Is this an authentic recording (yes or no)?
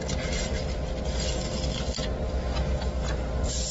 yes